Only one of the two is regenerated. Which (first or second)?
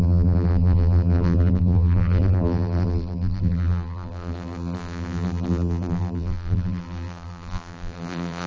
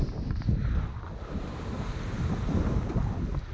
first